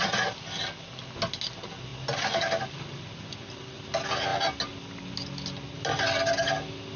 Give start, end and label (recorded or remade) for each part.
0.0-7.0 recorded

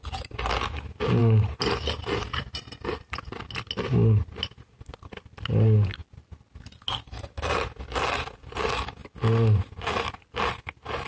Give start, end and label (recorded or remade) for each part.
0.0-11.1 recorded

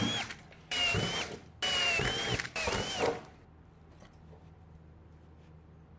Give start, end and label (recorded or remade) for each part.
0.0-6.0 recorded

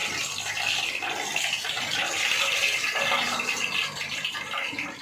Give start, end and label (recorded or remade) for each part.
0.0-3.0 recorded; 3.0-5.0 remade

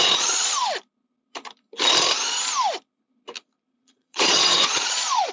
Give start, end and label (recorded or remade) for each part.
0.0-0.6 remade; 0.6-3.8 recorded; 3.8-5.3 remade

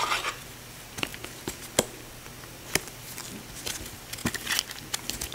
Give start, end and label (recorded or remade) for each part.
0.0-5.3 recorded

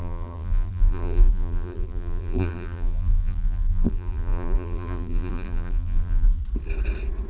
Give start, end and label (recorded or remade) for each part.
0.0-6.4 remade; 6.4-7.3 recorded

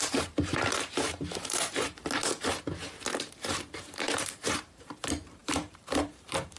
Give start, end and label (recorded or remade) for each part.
0.0-2.0 remade; 2.0-3.5 recorded; 3.5-6.6 remade